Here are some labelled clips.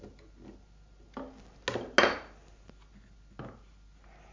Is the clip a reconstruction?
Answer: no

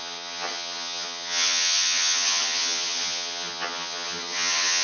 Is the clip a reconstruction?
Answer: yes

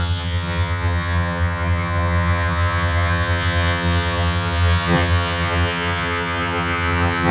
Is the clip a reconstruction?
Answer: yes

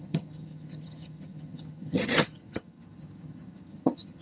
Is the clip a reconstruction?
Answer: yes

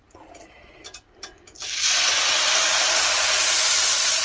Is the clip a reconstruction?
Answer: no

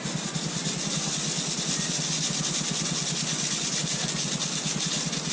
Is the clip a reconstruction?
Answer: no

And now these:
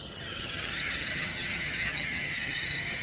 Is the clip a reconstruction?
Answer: yes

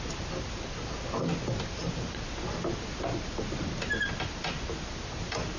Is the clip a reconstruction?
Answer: no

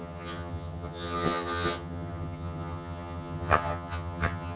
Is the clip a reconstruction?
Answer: yes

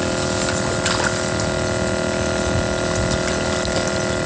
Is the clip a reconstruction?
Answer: no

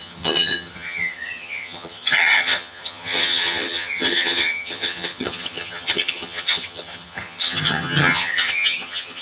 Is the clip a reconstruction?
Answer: yes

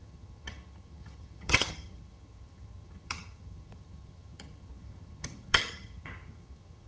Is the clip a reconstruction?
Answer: yes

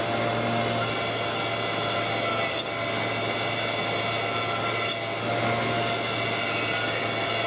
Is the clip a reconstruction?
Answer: no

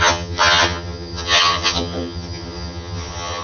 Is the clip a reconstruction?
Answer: yes